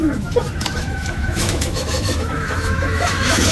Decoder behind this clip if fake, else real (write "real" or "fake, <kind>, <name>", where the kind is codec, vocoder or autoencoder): fake, autoencoder, DAC-VAE